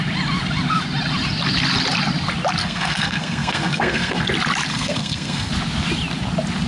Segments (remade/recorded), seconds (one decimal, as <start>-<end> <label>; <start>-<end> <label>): 0.0-2.6 recorded; 2.6-4.2 remade; 4.2-4.7 recorded; 4.7-5.5 remade; 5.5-6.7 recorded